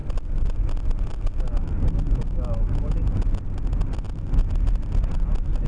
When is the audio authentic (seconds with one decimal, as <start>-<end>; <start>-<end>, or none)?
0.0-5.7